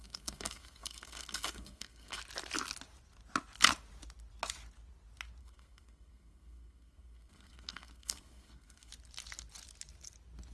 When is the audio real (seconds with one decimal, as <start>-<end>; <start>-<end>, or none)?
2.2-5.4; 8.9-10.5